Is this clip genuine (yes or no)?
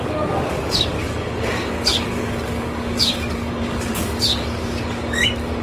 no